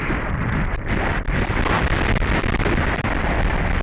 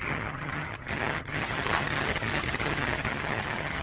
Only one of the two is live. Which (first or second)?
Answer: first